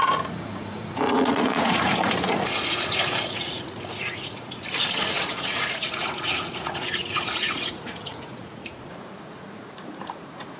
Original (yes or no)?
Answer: no